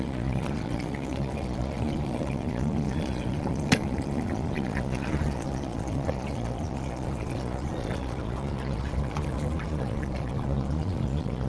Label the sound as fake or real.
fake